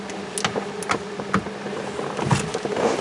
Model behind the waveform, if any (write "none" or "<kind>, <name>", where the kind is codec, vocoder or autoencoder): none